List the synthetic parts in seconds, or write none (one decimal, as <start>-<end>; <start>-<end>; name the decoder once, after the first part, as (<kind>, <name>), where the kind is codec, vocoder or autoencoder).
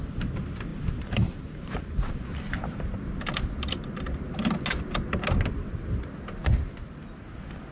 0.7-3.0 (vocoder, BigVGAN v2)